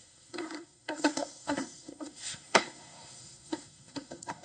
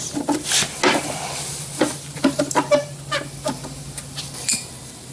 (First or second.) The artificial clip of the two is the first